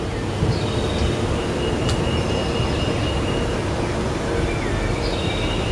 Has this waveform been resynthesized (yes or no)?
no